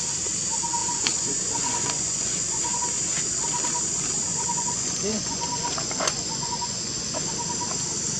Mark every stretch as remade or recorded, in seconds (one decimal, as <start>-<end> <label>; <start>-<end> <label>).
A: 0.0-0.8 recorded; 0.8-2.8 remade; 2.8-4.3 recorded; 4.3-7.3 remade; 7.3-8.2 recorded